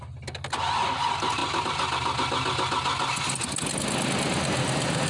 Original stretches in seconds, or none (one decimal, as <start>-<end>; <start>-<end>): 0.0-5.1